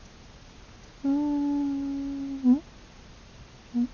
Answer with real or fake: real